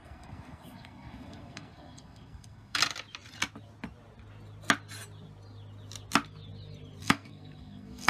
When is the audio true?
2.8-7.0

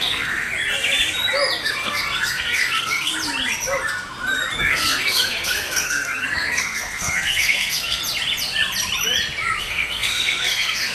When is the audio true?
0.5-1.6; 3.1-4.6; 8.0-9.6

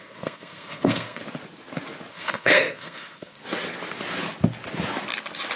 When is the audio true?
1.2-2.1; 3.4-5.6

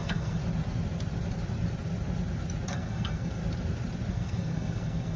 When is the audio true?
0.4-2.7; 3.4-4.1

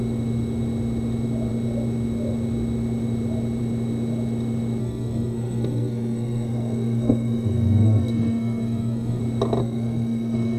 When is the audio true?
0.0-4.8; 9.2-9.6

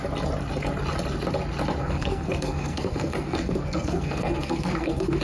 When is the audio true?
0.0-1.8